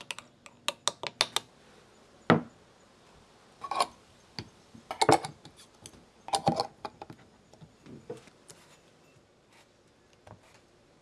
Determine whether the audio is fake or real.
real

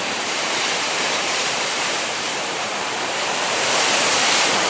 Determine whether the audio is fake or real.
fake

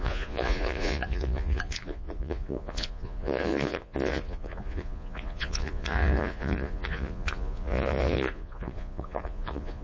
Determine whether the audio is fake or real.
fake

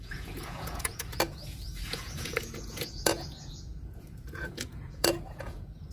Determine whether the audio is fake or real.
fake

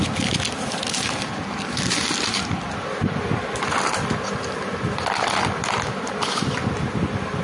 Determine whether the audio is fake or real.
real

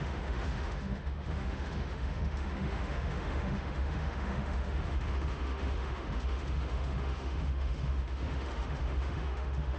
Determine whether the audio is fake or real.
fake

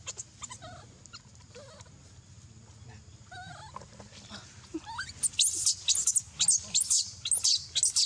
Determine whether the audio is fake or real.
real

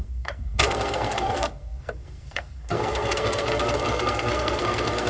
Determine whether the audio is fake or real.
fake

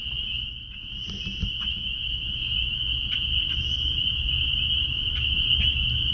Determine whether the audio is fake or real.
real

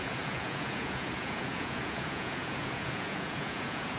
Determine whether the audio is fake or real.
fake